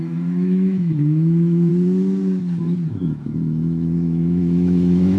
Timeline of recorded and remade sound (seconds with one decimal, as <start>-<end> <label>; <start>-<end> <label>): 0.0-1.7 remade; 1.7-2.9 recorded; 2.9-5.2 remade